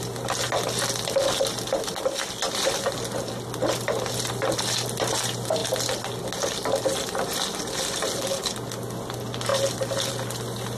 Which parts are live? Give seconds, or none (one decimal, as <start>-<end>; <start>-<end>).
0.0-10.8